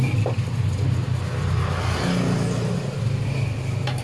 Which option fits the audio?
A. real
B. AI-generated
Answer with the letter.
A